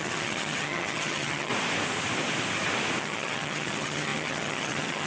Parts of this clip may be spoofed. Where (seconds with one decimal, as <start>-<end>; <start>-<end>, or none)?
0.0-1.5; 3.0-5.1